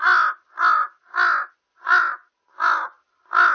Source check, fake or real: real